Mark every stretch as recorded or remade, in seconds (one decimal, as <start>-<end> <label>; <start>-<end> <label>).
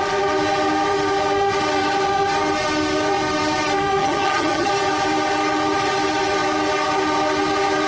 0.0-4.0 recorded; 4.0-4.7 remade; 4.7-7.9 recorded